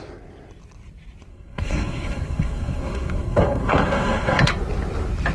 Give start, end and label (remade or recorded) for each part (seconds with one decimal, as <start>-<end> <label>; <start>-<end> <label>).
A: 0.0-1.3 recorded; 1.3-4.5 remade; 4.5-5.3 recorded